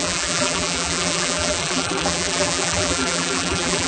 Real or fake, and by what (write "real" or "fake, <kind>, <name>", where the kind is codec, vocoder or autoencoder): fake, vocoder, BigVGAN v2